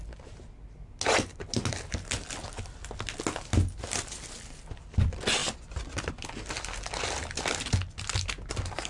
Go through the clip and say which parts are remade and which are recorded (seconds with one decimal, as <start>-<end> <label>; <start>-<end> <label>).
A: 0.0-8.9 recorded